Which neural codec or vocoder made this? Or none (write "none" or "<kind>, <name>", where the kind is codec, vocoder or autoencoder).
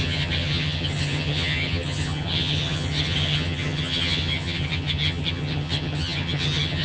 vocoder, HiFi-GAN